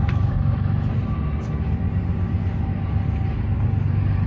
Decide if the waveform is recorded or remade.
recorded